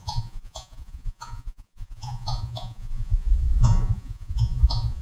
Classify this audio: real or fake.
fake